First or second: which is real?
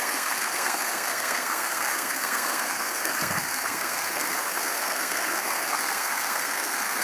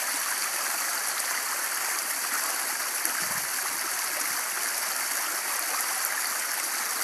second